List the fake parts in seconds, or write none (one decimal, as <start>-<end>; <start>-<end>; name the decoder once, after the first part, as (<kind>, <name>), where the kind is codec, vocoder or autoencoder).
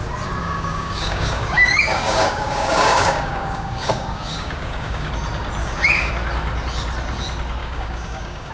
0.4-5.1 (codec, DAC); 5.6-6.1; 7.6-8.5